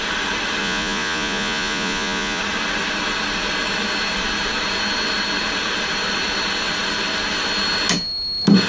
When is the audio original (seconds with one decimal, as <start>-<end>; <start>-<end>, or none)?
0.0-0.6; 2.4-8.7